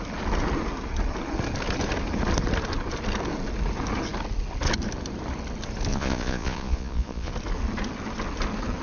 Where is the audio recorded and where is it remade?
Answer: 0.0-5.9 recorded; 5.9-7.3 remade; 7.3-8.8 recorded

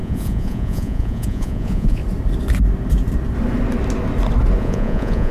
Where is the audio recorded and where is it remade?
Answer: 0.0-2.0 remade; 2.0-4.6 recorded; 4.6-5.3 remade

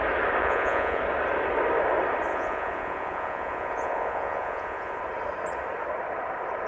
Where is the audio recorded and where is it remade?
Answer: 0.0-0.4 recorded; 0.4-1.0 remade; 1.0-2.3 recorded; 2.3-5.0 remade; 5.0-6.7 recorded

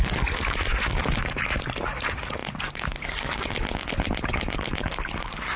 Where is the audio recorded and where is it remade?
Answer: 0.0-5.6 recorded